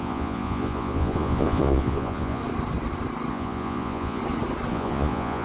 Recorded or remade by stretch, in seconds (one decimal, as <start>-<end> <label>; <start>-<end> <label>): 0.0-2.4 remade; 2.4-3.3 recorded; 3.3-4.2 remade; 4.2-4.7 recorded; 4.7-5.4 remade